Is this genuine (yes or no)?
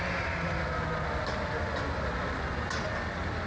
yes